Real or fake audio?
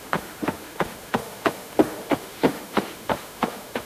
fake